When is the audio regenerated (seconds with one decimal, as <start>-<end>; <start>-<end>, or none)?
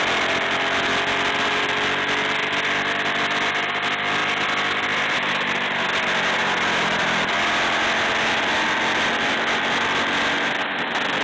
none